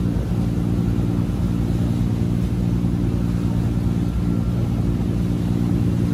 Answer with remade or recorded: recorded